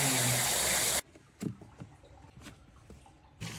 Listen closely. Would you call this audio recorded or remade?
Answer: recorded